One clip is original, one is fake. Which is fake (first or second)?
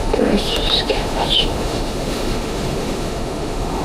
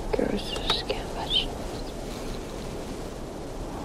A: first